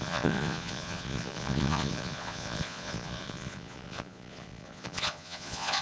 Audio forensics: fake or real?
fake